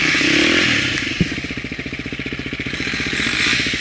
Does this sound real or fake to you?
real